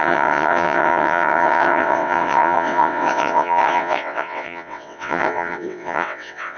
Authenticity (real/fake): fake